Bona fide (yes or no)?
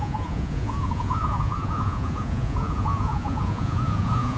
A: no